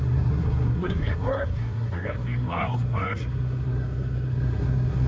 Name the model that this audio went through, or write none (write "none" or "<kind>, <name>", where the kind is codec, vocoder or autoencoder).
codec, SNAC